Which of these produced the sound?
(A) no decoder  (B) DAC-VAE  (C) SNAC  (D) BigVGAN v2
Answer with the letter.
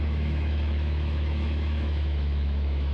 B